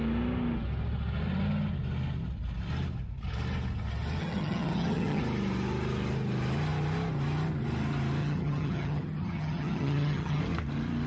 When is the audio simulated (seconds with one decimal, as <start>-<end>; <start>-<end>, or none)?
4.2-5.2; 8.2-10.4